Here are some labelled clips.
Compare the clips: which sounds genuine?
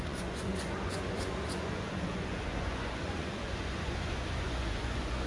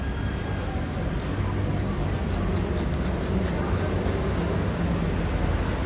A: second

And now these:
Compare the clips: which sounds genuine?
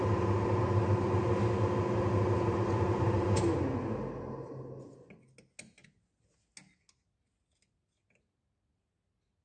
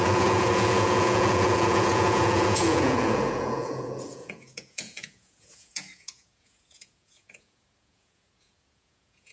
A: first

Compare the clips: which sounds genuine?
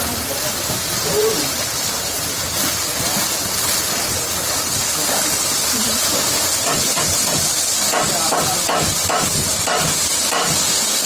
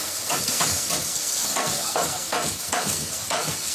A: first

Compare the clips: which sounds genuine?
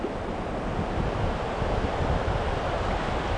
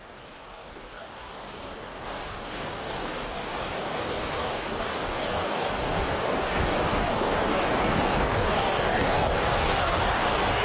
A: first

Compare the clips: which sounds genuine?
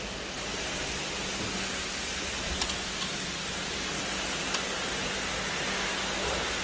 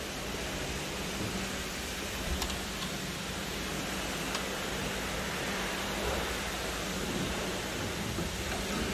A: first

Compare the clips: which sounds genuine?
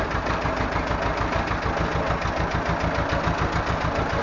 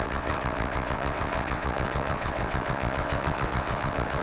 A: first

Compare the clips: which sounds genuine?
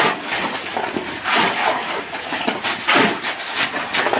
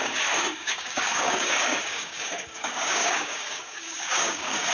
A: first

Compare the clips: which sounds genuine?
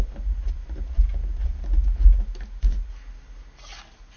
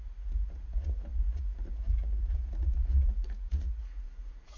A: first